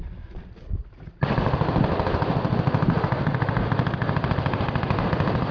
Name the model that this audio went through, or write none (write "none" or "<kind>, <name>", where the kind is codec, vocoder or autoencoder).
none